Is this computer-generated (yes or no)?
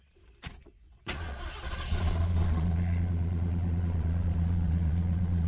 yes